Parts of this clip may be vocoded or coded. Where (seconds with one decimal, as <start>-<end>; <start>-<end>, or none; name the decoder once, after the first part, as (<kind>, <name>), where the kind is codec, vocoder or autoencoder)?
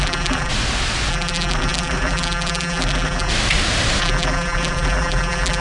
0.0-0.5 (vocoder, BigVGAN v2); 1.1-3.3; 4.0-5.6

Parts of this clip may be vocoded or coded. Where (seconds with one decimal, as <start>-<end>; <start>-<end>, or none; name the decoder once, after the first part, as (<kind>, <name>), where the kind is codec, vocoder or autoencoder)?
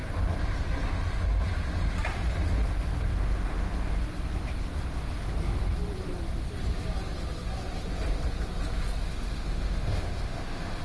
3.1-4.0 (autoencoder, DAC-VAE); 9.0-10.8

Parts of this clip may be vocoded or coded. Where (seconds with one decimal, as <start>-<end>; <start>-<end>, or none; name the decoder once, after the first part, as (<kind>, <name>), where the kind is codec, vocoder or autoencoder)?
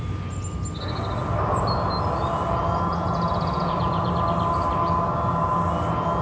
2.9-4.1 (vocoder, Vocos)